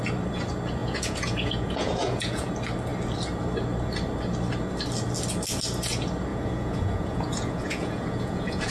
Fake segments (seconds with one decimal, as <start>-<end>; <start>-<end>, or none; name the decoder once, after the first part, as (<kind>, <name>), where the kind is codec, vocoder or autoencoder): 0.8-2.5 (vocoder, Vocos); 6.3-8.7